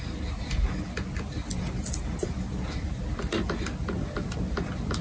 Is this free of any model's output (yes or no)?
yes